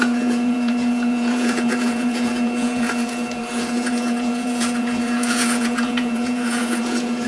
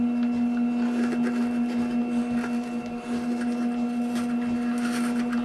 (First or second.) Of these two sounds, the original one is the second